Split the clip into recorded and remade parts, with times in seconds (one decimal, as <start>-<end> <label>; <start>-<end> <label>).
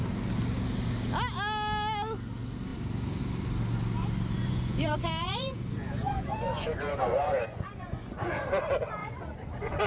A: 0.0-4.4 recorded; 4.4-8.2 remade; 8.2-9.0 recorded; 9.0-9.9 remade